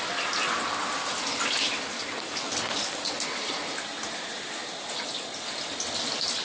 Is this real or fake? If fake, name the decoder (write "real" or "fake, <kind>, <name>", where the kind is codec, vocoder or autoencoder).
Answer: real